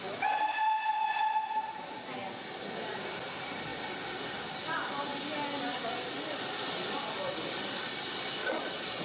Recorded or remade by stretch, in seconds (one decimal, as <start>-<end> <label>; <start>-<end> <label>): 0.0-8.4 recorded; 8.4-9.0 remade